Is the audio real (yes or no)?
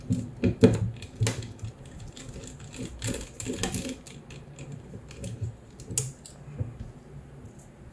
yes